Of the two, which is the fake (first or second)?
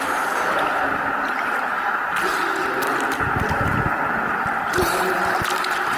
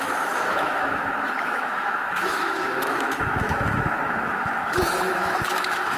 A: second